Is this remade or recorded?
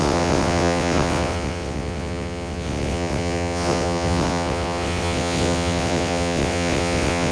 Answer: remade